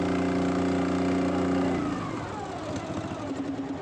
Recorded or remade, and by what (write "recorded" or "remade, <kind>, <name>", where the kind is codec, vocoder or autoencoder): recorded